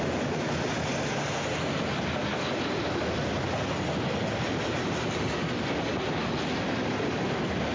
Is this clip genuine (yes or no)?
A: yes